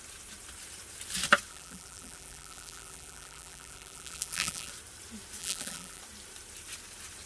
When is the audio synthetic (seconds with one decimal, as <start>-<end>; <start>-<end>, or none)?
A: 1.5-4.7; 5.4-6.0